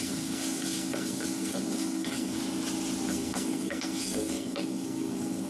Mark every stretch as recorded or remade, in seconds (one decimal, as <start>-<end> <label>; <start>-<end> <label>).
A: 0.0-2.4 remade; 2.4-3.1 recorded; 3.1-5.5 remade